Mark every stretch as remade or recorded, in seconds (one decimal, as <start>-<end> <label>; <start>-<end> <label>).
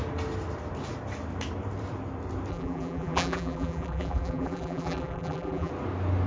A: 0.0-2.5 recorded; 2.5-5.7 remade; 5.7-6.3 recorded